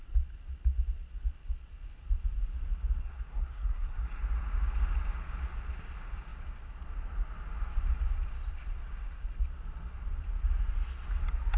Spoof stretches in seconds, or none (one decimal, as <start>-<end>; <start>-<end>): 3.0-4.2